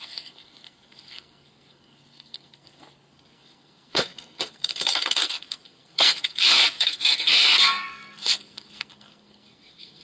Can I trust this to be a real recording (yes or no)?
no